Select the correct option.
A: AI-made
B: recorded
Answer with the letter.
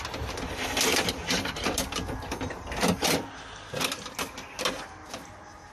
B